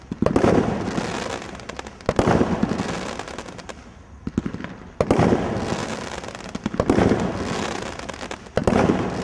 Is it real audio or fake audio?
real